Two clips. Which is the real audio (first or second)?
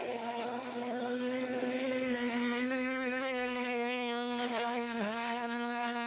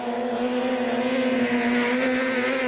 second